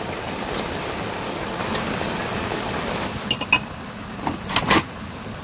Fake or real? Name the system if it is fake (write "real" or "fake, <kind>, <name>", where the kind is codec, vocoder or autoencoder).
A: real